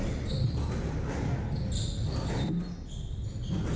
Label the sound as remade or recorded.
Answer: recorded